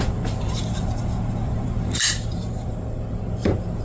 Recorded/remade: remade